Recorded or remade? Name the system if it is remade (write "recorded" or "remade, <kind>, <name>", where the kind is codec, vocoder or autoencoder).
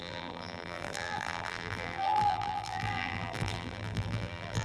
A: remade, vocoder, BigVGAN v2